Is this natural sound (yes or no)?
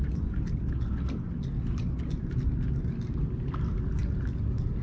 yes